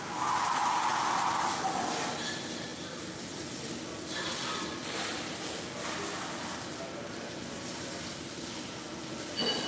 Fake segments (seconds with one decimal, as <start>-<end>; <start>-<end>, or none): none

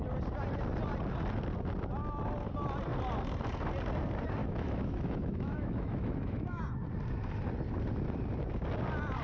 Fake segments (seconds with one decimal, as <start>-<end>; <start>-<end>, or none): 4.4-6.6

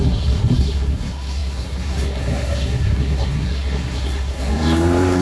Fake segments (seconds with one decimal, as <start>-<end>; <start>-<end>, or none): 0.0-5.2